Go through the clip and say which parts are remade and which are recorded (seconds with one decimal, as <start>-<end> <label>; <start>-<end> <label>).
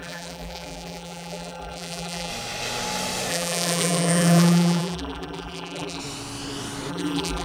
0.0-2.3 remade; 2.3-3.3 recorded; 3.3-6.0 remade; 6.0-6.9 recorded; 6.9-7.4 remade